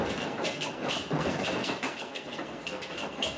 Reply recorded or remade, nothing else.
remade